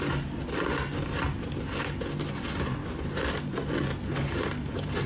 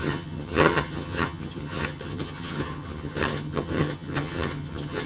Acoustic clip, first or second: first